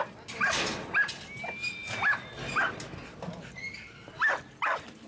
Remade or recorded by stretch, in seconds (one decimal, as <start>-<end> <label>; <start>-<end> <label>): 0.0-5.1 recorded